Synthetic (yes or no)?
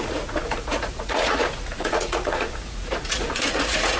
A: yes